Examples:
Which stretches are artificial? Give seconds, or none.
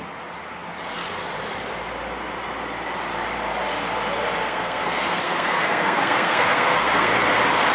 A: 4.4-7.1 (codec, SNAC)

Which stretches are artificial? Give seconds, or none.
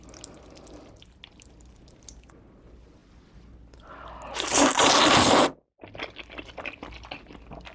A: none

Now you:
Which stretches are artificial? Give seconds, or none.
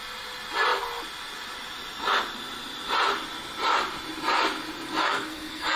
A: 5.0-5.8 (codec, SNAC)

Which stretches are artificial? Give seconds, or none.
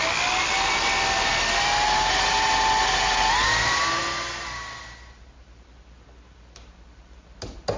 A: none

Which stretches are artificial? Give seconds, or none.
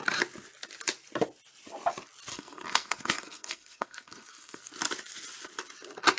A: 2.3-4.7 (codec, SNAC)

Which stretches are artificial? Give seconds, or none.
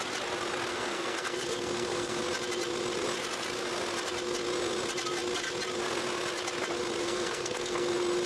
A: 0.7-2.2 (codec, SNAC); 7.0-7.9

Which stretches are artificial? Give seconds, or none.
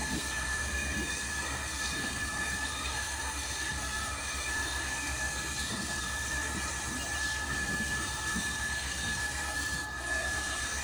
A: 0.0-6.5 (codec, SNAC); 7.2-10.8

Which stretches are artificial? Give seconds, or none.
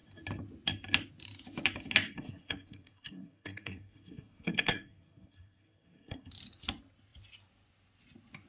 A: 2.1-6.3 (codec, SNAC)